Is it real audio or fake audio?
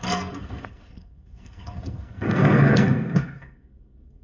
fake